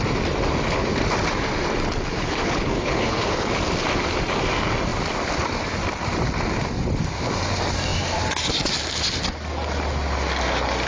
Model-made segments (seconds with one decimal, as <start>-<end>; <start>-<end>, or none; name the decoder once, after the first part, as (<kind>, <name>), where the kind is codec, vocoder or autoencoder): 2.1-3.6 (codec, HILCodec)